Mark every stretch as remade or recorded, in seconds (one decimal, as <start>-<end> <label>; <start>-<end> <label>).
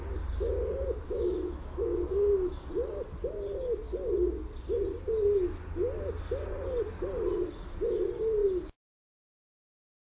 0.0-1.0 recorded; 1.0-2.6 remade; 2.6-10.1 recorded